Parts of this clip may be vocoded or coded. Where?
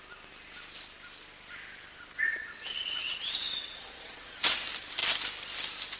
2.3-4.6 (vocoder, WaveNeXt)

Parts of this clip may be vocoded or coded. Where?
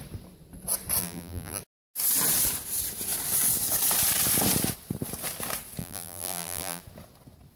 1.0-1.6 (vocoder, BigVGAN v2); 5.8-6.8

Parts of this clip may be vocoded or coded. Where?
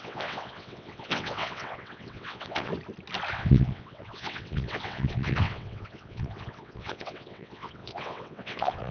0.0-2.7 (vocoder, WaveNeXt); 3.3-8.9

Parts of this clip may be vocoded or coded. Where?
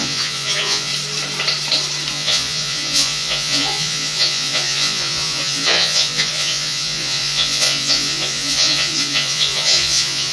0.0-0.9 (vocoder, Vocos); 2.1-10.3